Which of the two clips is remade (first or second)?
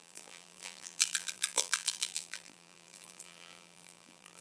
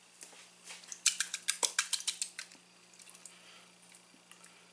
first